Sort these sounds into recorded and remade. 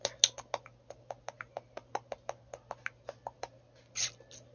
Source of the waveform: recorded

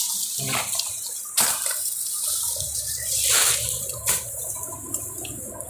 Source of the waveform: remade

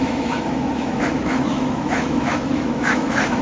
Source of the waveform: remade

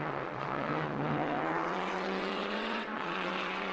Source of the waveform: remade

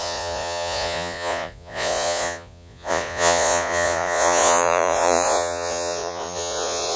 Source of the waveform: remade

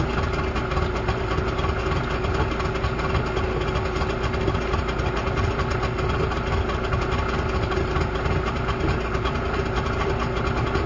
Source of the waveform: recorded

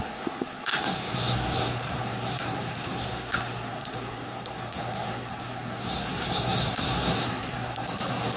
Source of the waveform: remade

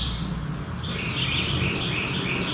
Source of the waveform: recorded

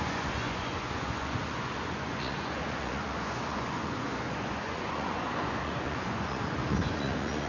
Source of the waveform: remade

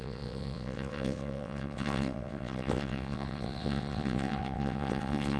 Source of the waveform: remade